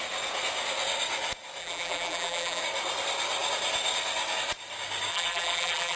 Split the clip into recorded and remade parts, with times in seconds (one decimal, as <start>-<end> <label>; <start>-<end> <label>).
0.0-1.6 recorded; 1.6-2.6 remade; 2.6-5.1 recorded; 5.1-6.0 remade